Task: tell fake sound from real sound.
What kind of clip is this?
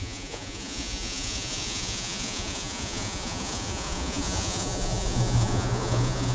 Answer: fake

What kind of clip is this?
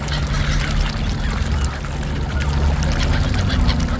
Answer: real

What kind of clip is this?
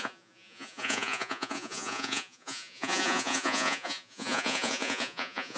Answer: fake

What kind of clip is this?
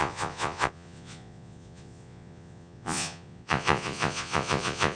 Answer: fake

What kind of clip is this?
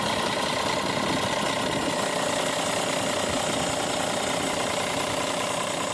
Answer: real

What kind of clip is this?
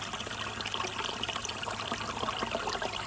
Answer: real